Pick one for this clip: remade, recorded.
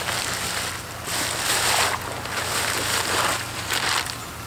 recorded